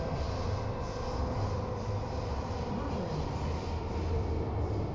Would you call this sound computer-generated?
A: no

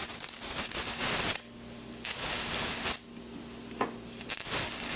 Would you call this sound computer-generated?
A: no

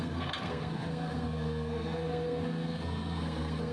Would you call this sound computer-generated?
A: yes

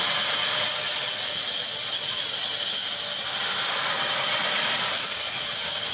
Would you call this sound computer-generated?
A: no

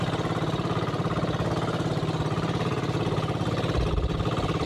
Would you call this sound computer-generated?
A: no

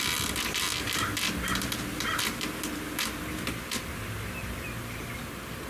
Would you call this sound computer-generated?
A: no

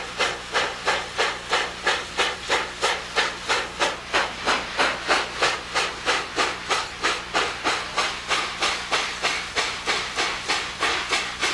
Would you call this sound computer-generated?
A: no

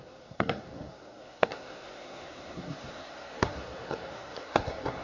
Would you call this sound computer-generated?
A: yes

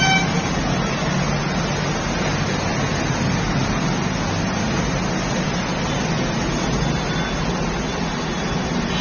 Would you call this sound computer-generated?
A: no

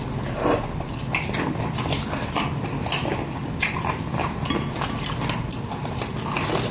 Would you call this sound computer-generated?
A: no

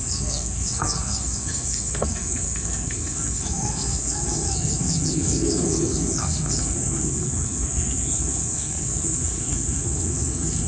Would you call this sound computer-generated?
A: yes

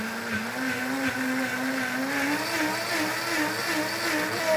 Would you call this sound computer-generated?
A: no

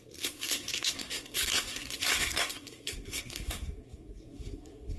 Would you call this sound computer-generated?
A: yes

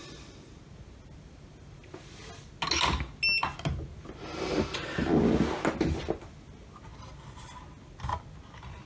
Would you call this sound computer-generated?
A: no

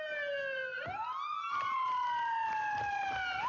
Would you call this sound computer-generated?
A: no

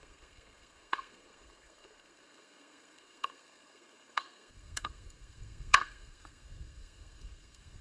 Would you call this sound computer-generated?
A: yes